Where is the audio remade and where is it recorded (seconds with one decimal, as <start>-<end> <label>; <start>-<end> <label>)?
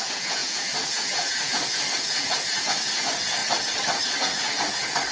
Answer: 0.0-3.4 remade; 3.4-4.2 recorded; 4.2-5.1 remade